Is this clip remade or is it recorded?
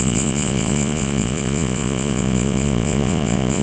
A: remade